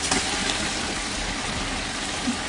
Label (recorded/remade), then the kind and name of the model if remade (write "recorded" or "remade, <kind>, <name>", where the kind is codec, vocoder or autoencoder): recorded